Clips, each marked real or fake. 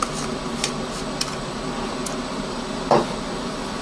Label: fake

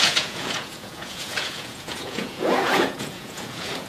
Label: fake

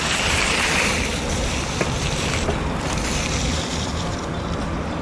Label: fake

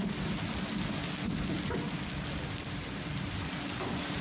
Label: real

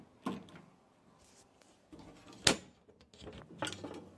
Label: real